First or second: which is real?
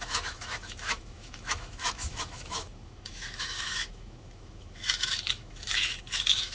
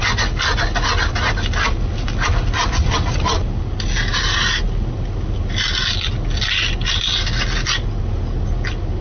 second